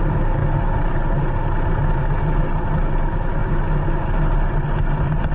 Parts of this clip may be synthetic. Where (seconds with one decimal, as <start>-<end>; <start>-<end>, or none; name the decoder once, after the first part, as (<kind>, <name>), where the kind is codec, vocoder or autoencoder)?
none